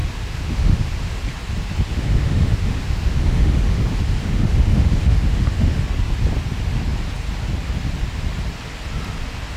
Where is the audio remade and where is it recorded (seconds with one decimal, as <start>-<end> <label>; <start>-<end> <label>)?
0.0-1.2 remade; 1.2-1.9 recorded; 1.9-5.8 remade; 5.8-9.6 recorded